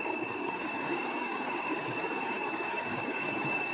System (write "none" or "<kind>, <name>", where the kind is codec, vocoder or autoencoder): codec, DAC